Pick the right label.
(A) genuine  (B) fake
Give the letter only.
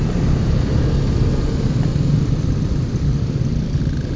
A